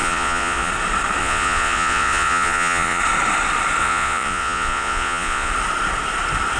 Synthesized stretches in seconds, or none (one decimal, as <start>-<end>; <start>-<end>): 0.0-0.7; 1.2-3.0; 3.8-5.5